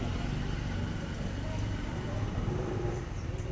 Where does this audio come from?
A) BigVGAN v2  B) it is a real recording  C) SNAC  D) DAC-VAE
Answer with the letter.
A